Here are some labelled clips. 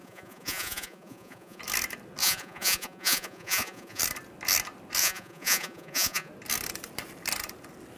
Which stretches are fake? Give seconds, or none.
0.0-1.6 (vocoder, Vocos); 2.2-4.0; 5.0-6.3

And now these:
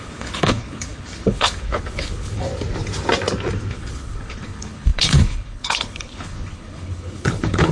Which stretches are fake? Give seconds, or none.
0.0-2.5 (codec, HILCodec); 3.7-7.7

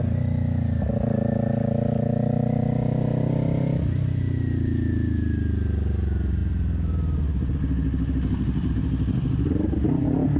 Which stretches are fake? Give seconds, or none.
none

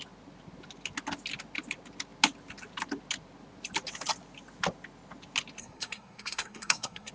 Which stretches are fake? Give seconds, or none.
5.6-7.1 (codec, SNAC)

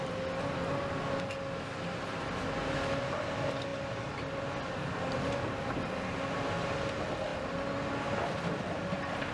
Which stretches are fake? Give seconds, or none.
none

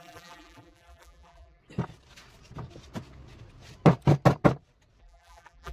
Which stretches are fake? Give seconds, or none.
0.0-1.6 (vocoder, BigVGAN v2); 5.0-5.7

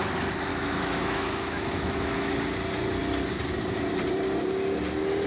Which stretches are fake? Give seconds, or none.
0.5-2.3 (autoencoder, DAC-VAE)

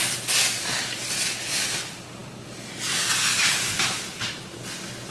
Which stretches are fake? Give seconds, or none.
none